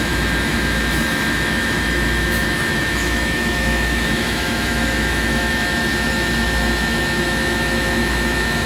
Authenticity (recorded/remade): remade